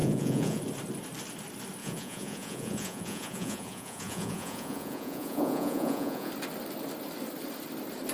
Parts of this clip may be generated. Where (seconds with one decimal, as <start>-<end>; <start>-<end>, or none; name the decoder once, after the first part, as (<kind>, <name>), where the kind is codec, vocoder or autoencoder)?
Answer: 0.0-0.6 (vocoder, Vocos); 1.8-6.3